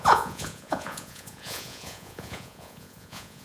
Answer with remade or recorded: remade